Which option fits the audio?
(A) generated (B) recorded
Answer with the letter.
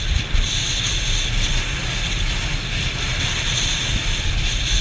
B